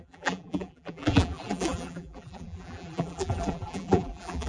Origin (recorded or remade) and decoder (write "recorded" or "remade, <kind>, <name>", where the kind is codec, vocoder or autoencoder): remade, vocoder, BigVGAN v2